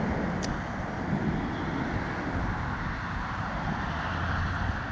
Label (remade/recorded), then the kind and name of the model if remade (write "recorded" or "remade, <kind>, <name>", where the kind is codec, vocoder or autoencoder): recorded